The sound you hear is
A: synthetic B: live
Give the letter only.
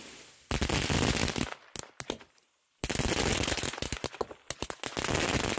B